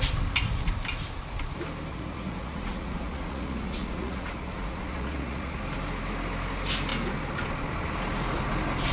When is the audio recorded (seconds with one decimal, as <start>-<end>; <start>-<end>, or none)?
0.0-1.9; 5.6-8.9